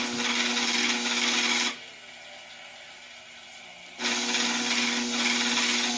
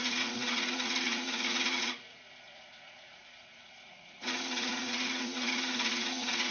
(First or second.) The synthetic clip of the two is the second